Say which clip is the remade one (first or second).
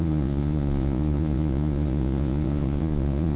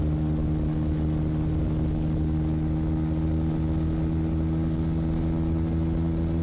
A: first